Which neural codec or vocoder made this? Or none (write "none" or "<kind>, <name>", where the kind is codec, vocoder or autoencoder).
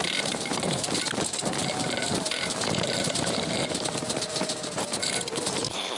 vocoder, BigVGAN v2